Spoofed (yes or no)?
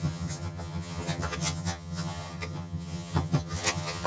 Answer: yes